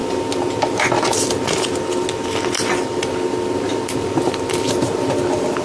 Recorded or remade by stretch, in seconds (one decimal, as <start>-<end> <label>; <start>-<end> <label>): 0.0-5.6 recorded